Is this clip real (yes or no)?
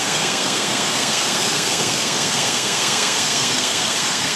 no